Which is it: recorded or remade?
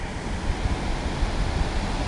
recorded